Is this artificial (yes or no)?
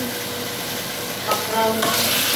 no